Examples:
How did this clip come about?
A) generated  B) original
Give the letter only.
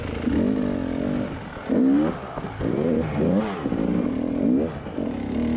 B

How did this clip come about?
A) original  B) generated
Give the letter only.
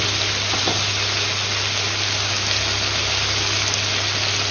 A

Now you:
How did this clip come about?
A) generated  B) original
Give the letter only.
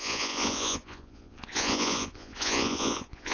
A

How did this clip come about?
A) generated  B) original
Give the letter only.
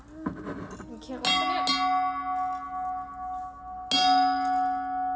B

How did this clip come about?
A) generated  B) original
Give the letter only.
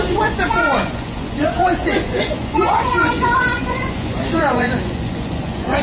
A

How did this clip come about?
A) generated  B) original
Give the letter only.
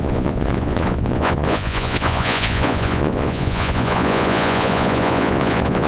A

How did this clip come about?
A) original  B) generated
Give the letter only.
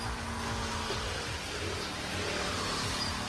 A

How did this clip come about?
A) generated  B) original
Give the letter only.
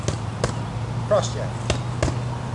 B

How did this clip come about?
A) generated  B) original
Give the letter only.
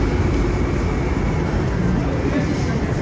B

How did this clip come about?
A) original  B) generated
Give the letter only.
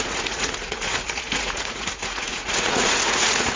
B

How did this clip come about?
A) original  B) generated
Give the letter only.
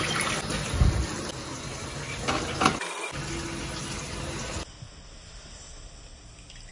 A